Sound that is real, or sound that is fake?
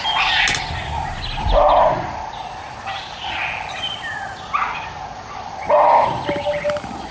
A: real